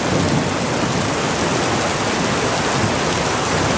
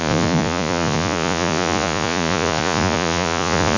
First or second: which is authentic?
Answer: first